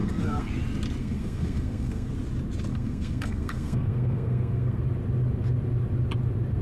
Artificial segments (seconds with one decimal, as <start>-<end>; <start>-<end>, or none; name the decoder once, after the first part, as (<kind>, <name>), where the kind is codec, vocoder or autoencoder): 0.0-0.5 (codec, SNAC); 1.0-2.1; 2.7-4.8